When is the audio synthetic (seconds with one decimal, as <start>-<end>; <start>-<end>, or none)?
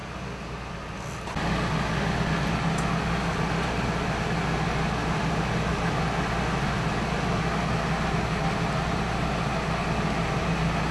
none